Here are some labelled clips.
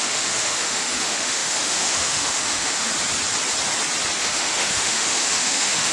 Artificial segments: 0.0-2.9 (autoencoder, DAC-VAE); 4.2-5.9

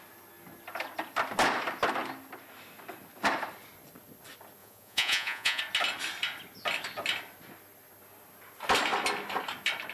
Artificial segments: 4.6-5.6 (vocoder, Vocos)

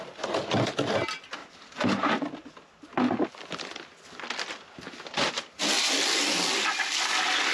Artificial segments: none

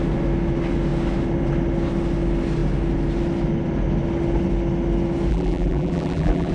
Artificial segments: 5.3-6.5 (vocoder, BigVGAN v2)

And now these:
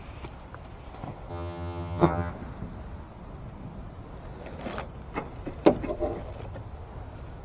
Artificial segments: 1.3-2.3 (vocoder, HiFi-GAN)

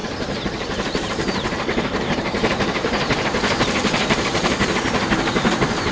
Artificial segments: 0.0-5.9 (vocoder, BigVGAN v2)

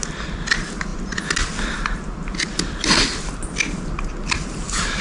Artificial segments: none